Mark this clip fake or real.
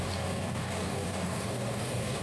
fake